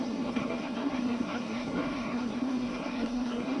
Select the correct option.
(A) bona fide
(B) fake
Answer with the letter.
B